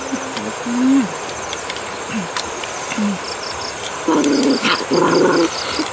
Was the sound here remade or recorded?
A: recorded